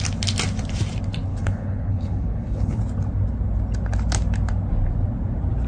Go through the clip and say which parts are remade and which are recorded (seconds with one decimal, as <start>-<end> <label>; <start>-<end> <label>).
0.0-1.3 recorded; 1.3-2.8 remade; 2.8-5.7 recorded